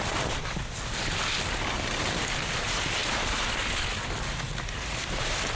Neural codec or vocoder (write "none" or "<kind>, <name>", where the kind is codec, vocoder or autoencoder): none